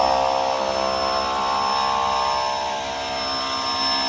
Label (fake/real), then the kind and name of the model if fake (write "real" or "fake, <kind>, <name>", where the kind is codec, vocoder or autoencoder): real